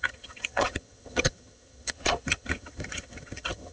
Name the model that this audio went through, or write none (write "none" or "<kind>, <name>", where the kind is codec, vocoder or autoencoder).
vocoder, HiFi-GAN